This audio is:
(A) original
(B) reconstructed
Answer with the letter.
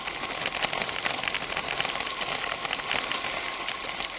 A